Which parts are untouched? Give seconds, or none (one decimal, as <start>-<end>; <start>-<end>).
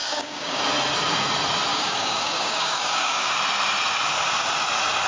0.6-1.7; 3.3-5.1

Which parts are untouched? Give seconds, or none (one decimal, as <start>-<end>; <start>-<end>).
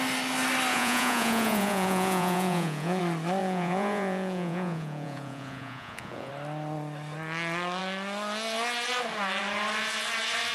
0.0-0.7; 3.0-3.4; 6.3-10.5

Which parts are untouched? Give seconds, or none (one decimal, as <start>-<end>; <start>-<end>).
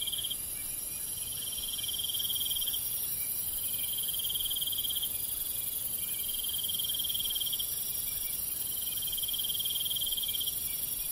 0.0-11.1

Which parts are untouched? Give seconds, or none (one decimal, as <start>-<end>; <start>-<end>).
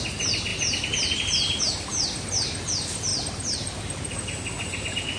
0.0-0.5; 1.6-3.1; 3.8-5.2